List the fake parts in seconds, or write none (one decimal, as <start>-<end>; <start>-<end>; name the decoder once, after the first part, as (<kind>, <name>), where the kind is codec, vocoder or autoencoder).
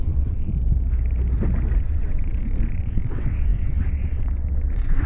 0.0-0.5 (vocoder, WaveNeXt); 1.8-5.1